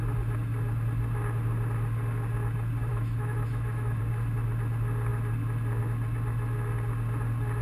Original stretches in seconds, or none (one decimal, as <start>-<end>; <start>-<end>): 0.0-2.9; 4.0-7.6